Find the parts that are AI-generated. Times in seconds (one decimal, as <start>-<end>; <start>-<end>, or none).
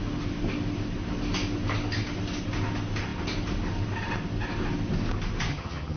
5.5-6.0